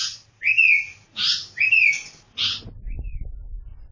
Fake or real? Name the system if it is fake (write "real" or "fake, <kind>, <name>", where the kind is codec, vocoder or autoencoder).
real